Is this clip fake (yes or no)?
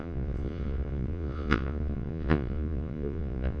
yes